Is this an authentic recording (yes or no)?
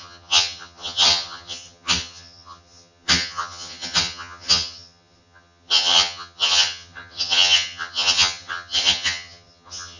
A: no